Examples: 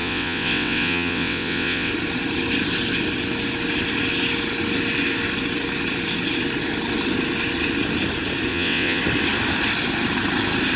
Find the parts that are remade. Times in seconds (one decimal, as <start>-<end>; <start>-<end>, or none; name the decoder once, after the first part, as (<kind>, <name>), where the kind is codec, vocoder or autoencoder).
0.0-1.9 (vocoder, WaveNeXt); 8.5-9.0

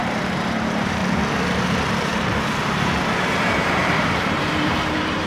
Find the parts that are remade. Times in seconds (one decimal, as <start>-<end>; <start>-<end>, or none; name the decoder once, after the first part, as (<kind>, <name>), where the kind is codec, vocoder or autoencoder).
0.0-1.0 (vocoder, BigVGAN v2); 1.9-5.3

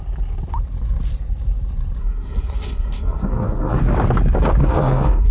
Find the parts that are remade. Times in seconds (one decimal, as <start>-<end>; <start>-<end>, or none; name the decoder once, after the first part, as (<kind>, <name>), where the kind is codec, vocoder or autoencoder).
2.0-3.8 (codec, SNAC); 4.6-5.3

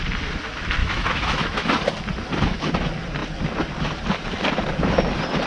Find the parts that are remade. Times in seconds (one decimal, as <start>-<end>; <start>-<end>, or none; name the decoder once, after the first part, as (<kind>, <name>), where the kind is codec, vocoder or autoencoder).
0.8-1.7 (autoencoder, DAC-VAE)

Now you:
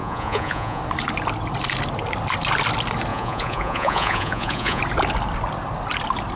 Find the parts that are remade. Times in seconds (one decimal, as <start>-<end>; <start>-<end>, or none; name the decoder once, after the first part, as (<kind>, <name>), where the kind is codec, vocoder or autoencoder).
0.0-0.8 (vocoder, Vocos); 3.1-4.8

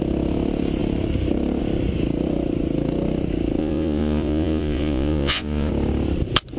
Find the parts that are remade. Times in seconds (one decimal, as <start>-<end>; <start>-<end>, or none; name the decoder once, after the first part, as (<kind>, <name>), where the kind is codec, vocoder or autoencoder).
3.6-5.7 (vocoder, Vocos)